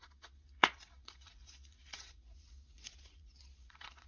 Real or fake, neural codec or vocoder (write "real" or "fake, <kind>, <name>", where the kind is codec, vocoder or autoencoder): fake, vocoder, Vocos